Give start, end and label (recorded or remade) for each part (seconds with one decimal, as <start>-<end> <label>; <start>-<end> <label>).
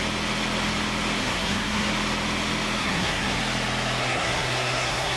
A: 0.0-1.2 recorded; 1.2-1.9 remade; 1.9-2.8 recorded; 2.8-3.4 remade; 3.4-4.0 recorded; 4.0-5.2 remade